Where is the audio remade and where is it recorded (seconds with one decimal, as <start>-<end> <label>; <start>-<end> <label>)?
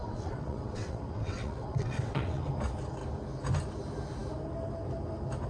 0.0-2.5 remade; 2.5-5.5 recorded